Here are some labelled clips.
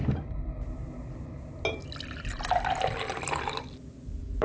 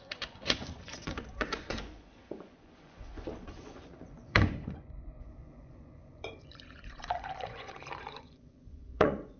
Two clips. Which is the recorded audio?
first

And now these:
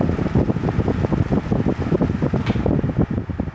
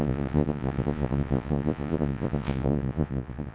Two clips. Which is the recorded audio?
first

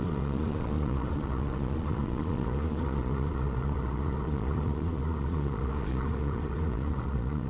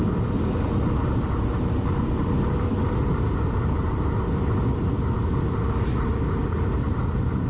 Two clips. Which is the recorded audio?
second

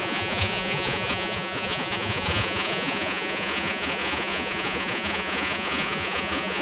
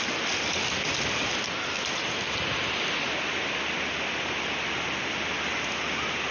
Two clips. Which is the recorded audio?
second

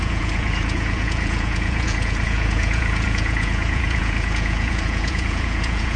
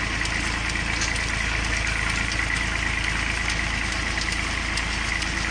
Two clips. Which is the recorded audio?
second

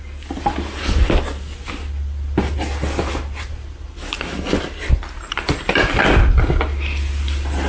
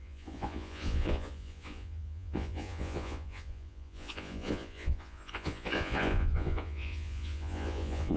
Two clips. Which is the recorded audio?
first